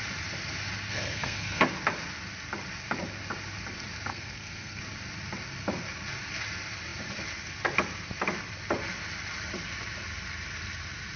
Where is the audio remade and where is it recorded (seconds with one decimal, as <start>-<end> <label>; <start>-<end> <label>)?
0.0-0.9 recorded; 0.9-1.6 remade; 1.6-4.1 recorded; 4.1-4.8 remade; 4.8-11.2 recorded